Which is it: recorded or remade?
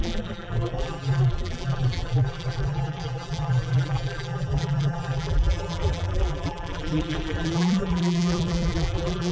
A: remade